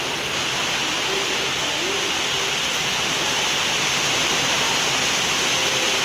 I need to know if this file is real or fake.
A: real